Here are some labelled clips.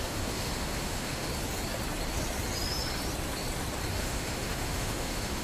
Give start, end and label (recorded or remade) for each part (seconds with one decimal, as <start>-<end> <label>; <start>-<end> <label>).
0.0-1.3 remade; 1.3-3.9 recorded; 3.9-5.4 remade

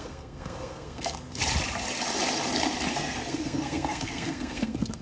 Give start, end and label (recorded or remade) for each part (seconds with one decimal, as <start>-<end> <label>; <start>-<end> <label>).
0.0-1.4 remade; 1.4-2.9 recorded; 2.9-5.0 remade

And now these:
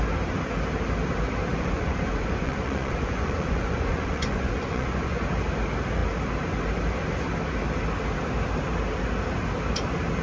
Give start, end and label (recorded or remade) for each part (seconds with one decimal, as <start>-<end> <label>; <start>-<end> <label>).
0.0-1.5 recorded; 1.5-5.2 remade; 5.2-10.2 recorded